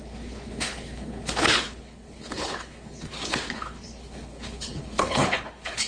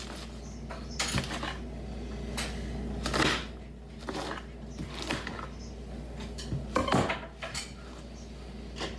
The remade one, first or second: first